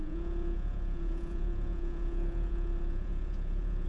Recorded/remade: remade